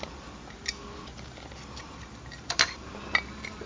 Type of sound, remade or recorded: recorded